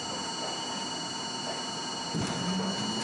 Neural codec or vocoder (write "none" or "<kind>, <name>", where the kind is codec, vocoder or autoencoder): none